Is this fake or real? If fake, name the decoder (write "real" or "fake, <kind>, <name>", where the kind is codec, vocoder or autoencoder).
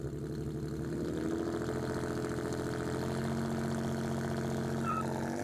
real